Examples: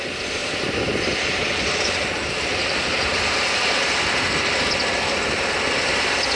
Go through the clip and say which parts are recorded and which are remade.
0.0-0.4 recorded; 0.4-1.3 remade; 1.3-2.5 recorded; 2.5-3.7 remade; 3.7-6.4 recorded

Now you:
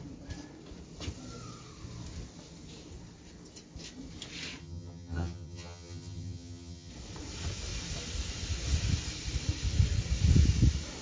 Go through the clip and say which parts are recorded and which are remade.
0.0-4.6 recorded; 4.6-6.9 remade; 6.9-11.0 recorded